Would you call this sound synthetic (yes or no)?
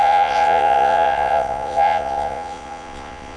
yes